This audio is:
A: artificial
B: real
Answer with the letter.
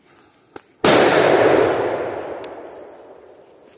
B